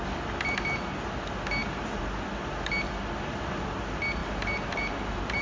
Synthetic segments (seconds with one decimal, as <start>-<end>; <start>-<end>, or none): 1.6-2.3; 4.2-5.4